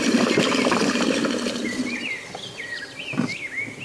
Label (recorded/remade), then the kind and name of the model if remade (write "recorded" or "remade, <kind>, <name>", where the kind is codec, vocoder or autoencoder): recorded